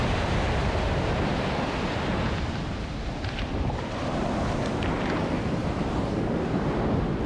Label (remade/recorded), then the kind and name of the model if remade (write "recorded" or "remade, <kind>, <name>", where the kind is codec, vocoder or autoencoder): recorded